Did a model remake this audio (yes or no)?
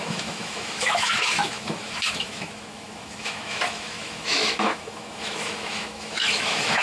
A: yes